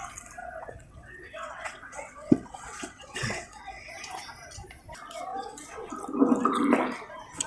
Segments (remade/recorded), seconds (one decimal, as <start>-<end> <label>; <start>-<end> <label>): 0.0-0.4 recorded; 0.4-3.9 remade; 3.9-5.3 recorded; 5.3-5.9 remade; 5.9-7.5 recorded